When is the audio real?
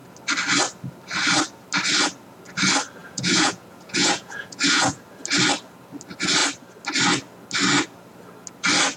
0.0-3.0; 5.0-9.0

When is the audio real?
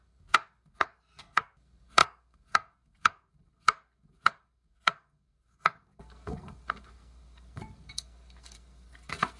none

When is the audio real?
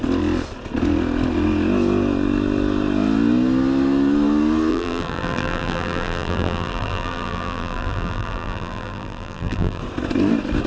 0.0-4.7; 9.8-10.7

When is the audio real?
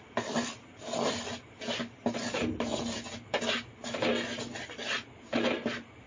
0.0-6.1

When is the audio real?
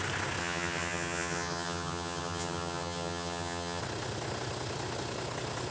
0.0-0.4; 3.8-5.7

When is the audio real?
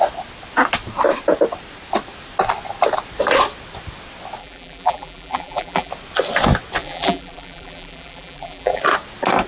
0.0-4.4; 5.9-6.8; 8.8-9.5